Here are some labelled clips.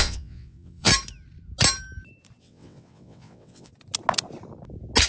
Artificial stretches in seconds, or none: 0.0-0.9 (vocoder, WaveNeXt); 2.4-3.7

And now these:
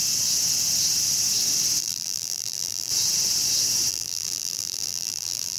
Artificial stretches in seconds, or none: 1.8-2.9 (vocoder, BigVGAN v2); 3.9-5.6

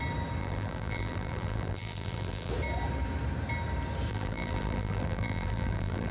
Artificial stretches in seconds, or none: 0.4-2.5 (vocoder, BigVGAN v2); 4.1-6.1

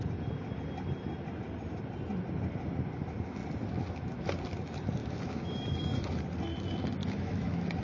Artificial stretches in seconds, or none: 5.0-6.2 (autoencoder, DAC-VAE); 7.0-7.8

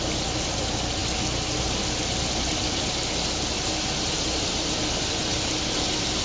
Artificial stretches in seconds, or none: none

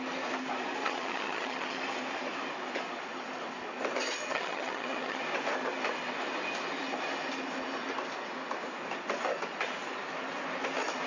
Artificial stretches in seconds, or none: 0.8-1.8 (vocoder, HiFi-GAN); 4.3-5.2

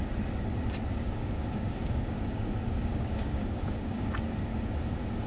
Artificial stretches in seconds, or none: 0.9-4.1 (codec, DAC)

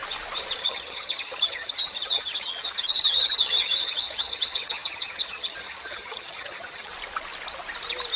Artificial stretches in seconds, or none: 0.6-6.9 (vocoder, HiFi-GAN)